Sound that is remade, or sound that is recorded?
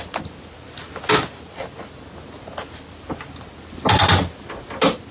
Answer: recorded